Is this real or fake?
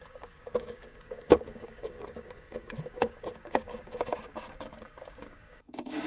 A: fake